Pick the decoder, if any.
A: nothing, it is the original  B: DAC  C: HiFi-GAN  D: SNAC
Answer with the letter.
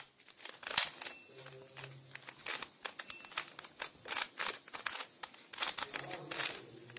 A